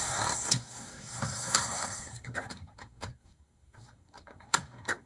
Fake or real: fake